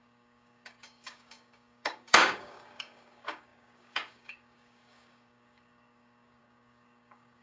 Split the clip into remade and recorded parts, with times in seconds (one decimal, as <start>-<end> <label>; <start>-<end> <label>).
0.0-7.4 remade